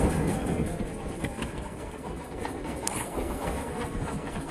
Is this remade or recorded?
remade